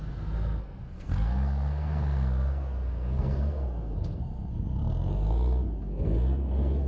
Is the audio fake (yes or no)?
yes